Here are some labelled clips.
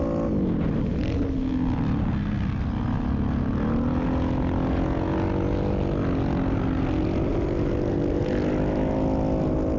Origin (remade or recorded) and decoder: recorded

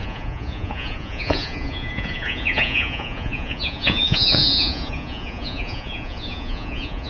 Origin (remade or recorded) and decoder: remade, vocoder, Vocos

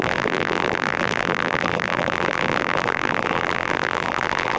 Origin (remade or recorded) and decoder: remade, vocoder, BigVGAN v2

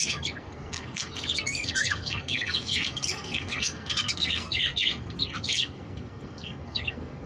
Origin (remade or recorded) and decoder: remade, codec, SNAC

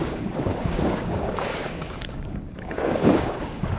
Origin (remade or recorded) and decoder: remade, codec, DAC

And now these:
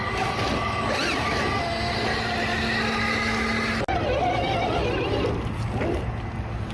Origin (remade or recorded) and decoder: recorded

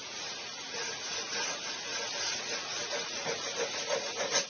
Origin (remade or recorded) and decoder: remade, vocoder, Vocos